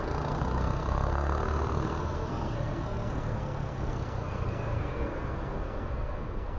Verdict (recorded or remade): remade